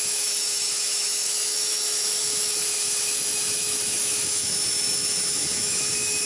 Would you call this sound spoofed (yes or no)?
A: yes